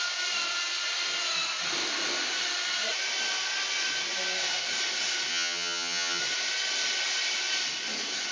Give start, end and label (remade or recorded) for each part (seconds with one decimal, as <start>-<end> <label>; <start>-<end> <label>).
0.0-5.3 recorded; 5.3-6.2 remade; 6.2-8.3 recorded

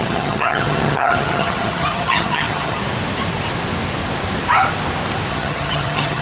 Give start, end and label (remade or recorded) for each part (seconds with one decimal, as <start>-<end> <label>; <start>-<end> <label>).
0.0-2.8 remade; 2.8-5.3 recorded; 5.3-6.2 remade

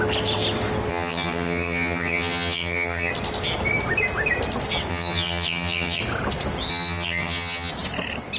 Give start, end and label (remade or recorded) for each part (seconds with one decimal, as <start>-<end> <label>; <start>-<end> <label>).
0.0-0.9 recorded; 0.9-3.1 remade; 3.1-4.9 recorded; 4.9-6.0 remade; 6.0-6.7 recorded; 6.7-7.7 remade; 7.7-8.4 recorded

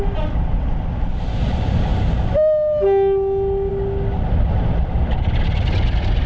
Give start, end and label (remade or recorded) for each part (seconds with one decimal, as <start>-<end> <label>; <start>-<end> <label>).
0.0-6.3 recorded

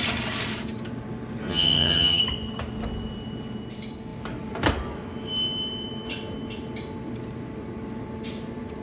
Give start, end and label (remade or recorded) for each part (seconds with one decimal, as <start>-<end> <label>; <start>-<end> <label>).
0.0-1.5 recorded; 1.5-2.2 remade; 2.2-8.8 recorded